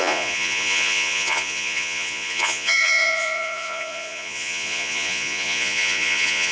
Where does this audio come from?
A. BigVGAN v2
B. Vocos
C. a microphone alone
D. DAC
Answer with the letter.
B